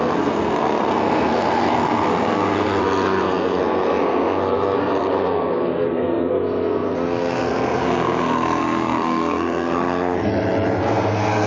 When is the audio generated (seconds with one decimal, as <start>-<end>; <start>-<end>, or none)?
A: 0.0-10.3; 10.8-11.5